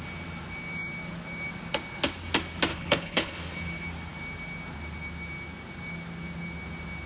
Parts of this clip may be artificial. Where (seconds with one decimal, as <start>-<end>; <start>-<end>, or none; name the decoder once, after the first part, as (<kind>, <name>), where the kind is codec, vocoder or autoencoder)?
2.7-3.3 (codec, HILCodec)